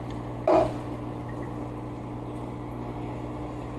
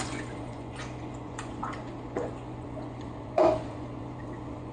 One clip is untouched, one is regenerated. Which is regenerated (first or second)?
second